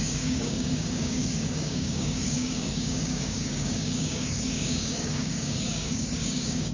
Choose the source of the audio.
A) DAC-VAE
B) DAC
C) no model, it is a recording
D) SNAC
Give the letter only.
B